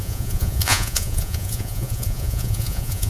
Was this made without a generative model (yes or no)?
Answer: no